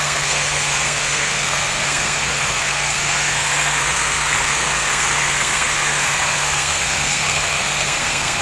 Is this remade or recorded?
remade